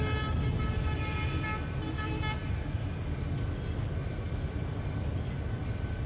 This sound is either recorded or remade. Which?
recorded